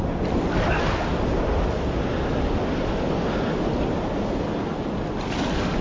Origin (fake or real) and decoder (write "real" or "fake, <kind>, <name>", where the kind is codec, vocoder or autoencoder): real